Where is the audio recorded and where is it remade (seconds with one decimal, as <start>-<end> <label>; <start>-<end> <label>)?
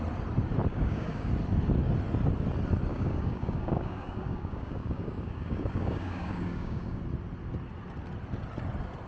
0.0-0.7 recorded; 0.7-1.3 remade; 1.3-2.9 recorded; 2.9-7.0 remade; 7.0-9.1 recorded